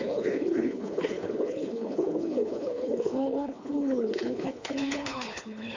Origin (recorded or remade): remade